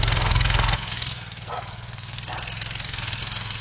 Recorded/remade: remade